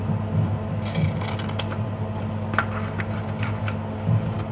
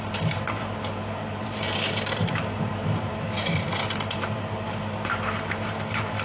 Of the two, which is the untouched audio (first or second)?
first